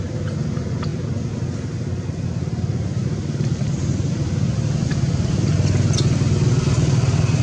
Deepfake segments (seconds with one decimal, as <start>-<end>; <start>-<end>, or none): none